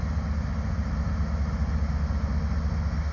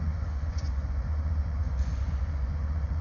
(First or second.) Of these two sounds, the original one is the first